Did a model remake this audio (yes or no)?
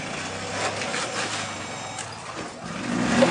no